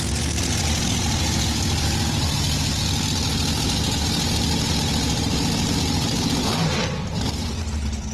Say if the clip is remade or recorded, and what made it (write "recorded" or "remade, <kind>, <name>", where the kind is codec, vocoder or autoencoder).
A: recorded